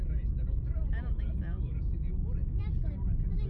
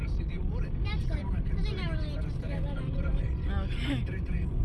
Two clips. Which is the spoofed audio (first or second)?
second